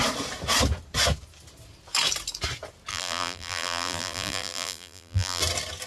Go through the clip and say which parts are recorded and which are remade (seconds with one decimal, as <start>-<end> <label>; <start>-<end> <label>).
0.0-2.9 recorded; 2.9-5.4 remade; 5.4-5.9 recorded